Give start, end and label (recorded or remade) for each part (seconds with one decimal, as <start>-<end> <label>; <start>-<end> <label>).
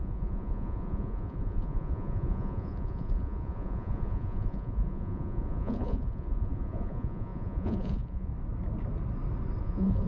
0.0-8.3 remade; 8.3-9.6 recorded; 9.6-10.1 remade